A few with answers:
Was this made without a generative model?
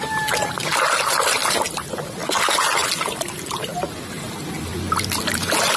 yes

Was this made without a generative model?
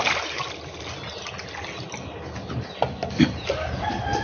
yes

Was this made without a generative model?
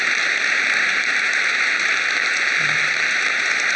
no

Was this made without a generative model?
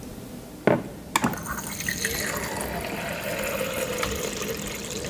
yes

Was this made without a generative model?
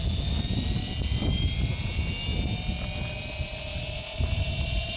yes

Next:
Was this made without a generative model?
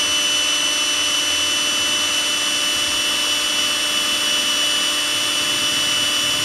yes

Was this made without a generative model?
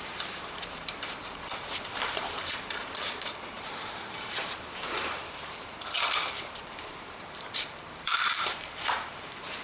no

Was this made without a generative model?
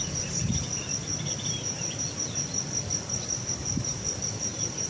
no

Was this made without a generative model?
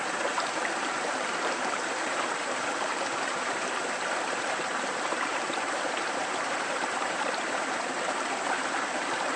no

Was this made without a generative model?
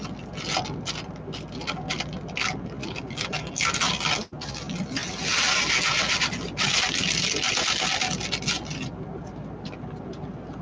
yes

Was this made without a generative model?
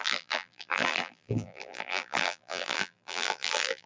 no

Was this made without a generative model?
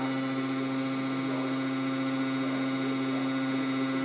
yes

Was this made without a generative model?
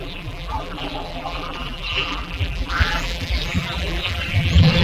no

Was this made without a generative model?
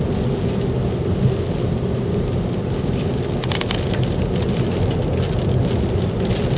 yes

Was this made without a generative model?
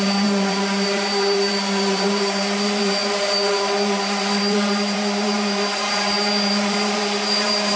no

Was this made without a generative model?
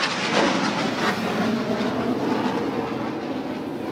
yes